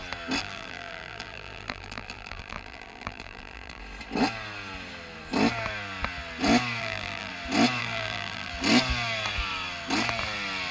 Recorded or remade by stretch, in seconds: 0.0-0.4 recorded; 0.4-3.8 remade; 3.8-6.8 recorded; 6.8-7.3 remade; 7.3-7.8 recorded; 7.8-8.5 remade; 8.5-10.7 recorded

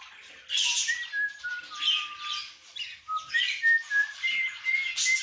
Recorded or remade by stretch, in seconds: 0.0-2.7 recorded; 2.7-4.7 remade; 4.7-5.2 recorded

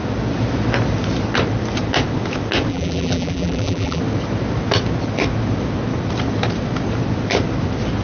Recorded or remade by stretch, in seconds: 0.0-2.7 recorded; 2.7-4.0 remade; 4.0-8.0 recorded

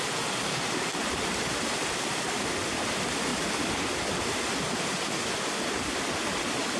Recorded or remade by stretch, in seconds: 0.0-0.9 recorded; 0.9-1.8 remade; 1.8-3.3 recorded; 3.3-4.5 remade; 4.5-6.8 recorded

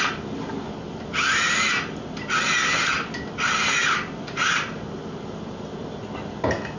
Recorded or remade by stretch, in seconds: 0.0-6.8 recorded